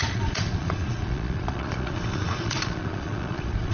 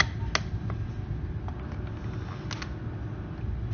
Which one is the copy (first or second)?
first